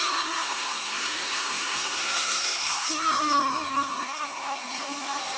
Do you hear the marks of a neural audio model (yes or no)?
yes